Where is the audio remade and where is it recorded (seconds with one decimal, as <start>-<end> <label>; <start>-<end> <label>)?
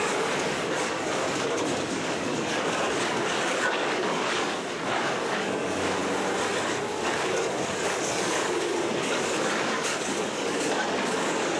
0.0-6.0 remade; 6.0-6.7 recorded; 6.7-11.6 remade